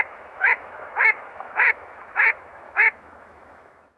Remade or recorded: remade